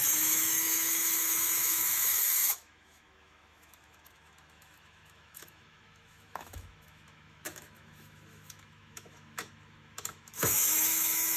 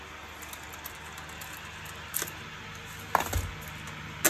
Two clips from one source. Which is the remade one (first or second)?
first